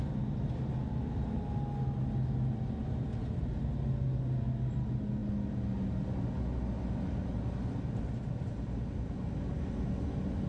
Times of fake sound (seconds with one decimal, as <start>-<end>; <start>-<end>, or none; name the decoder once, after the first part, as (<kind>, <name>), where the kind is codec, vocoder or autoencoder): none